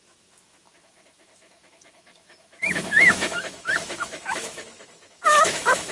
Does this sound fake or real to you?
fake